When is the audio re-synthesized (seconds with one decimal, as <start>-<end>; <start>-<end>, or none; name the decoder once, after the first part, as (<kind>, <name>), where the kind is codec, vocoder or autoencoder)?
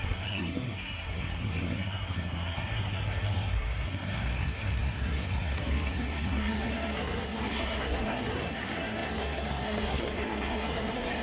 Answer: 0.0-11.2 (codec, SNAC)